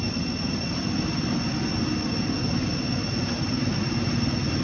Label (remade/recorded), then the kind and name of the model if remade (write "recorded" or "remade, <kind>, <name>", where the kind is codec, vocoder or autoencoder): recorded